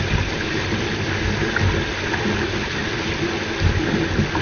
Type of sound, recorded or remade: recorded